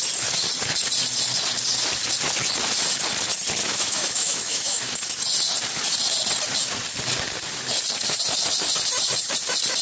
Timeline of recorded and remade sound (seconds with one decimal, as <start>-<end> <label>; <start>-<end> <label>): 0.0-3.6 recorded; 3.6-5.0 remade; 5.0-9.8 recorded